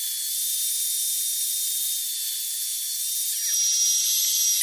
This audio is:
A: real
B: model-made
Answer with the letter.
A